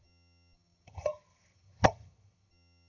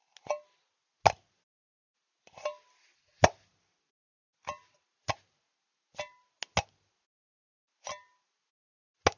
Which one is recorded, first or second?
second